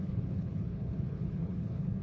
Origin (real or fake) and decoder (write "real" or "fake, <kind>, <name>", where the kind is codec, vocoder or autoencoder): fake, codec, HILCodec